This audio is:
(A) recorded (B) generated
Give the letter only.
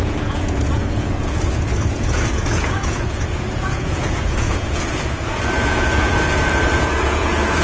B